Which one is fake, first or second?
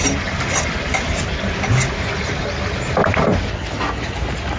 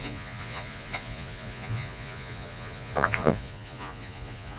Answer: second